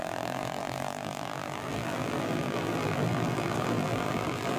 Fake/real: fake